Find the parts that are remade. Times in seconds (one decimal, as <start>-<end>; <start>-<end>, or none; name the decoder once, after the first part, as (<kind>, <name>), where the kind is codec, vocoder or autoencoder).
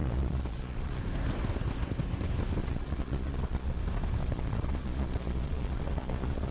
0.0-1.0 (vocoder, Vocos); 2.6-3.8; 4.2-6.5